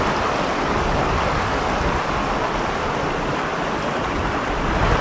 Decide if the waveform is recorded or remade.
recorded